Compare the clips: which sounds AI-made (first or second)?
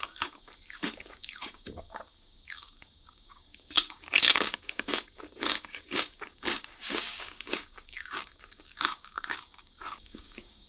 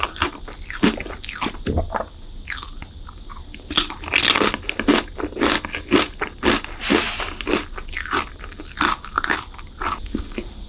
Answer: first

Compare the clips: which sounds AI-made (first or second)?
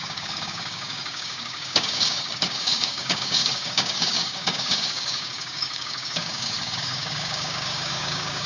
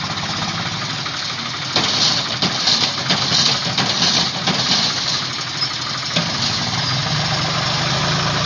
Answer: first